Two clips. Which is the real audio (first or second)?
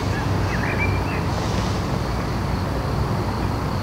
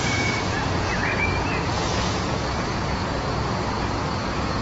first